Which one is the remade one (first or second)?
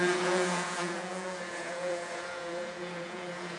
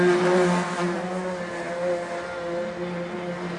first